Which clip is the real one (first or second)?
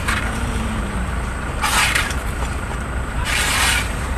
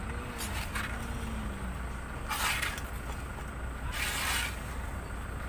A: second